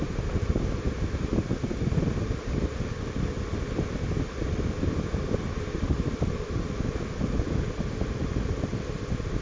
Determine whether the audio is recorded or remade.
recorded